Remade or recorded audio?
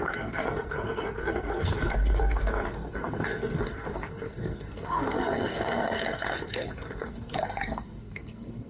remade